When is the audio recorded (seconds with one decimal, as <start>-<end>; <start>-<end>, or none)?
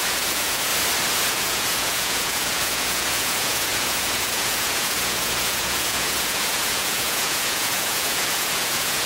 0.7-1.3